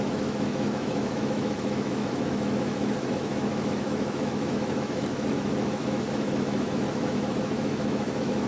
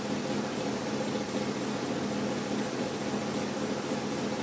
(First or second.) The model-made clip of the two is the first